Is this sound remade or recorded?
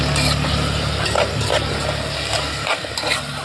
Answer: recorded